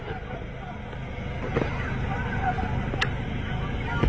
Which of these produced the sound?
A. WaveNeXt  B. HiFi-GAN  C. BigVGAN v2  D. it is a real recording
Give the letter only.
D